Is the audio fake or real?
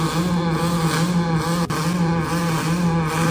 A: real